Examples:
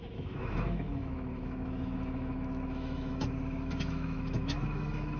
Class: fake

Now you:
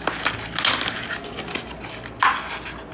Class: real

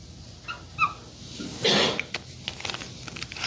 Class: real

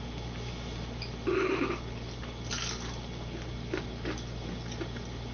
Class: real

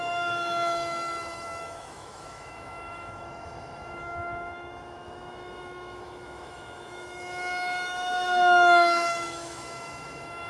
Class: fake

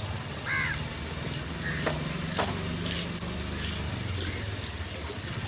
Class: real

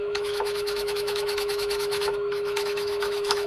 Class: fake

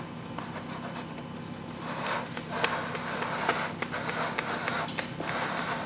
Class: real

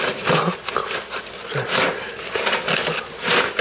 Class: real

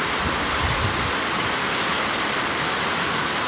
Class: real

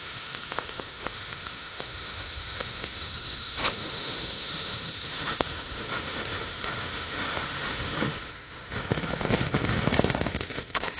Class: fake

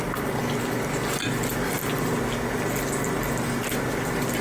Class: real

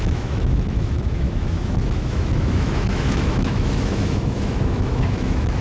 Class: fake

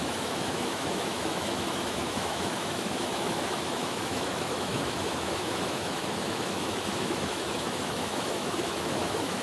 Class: fake